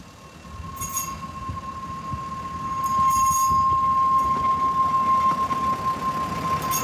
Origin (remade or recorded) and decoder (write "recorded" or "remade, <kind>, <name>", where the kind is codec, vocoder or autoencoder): recorded